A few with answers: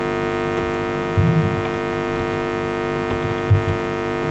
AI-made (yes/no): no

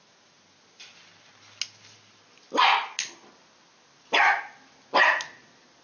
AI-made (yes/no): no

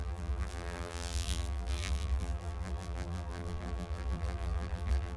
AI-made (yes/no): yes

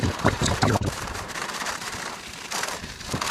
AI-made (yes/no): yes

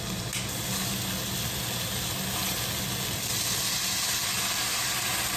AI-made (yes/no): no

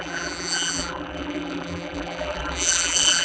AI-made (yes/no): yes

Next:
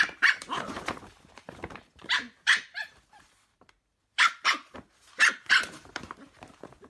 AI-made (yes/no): yes